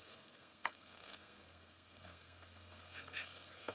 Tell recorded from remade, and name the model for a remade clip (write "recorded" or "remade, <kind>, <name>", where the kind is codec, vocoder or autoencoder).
remade, codec, SNAC